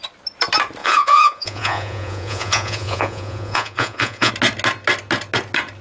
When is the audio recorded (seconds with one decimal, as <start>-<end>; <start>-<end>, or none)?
0.0-0.8; 4.3-5.8